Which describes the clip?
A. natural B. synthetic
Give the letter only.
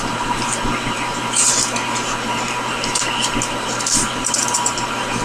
B